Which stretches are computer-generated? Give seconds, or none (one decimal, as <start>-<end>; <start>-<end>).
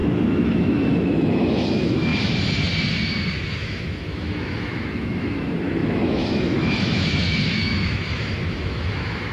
0.0-2.1; 3.4-9.3